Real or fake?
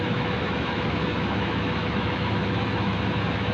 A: fake